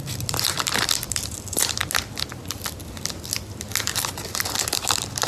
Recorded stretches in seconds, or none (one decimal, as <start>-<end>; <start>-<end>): 1.8-4.0